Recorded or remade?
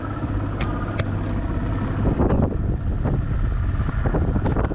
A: recorded